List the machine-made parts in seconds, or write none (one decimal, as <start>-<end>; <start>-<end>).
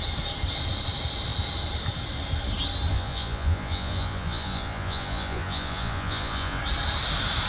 2.9-6.6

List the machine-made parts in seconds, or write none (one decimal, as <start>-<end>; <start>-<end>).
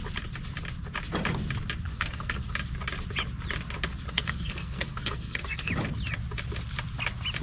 1.9-2.5; 4.1-5.7